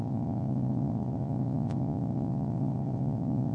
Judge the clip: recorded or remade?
remade